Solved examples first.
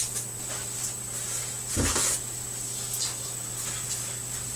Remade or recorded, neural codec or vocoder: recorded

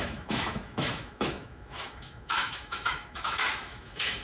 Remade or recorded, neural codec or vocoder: remade, autoencoder, DAC-VAE